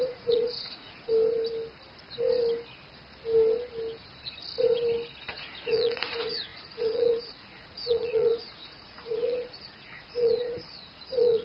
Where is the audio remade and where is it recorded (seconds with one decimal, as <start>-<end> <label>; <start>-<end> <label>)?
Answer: 0.0-1.1 remade; 1.1-5.3 recorded; 5.3-11.4 remade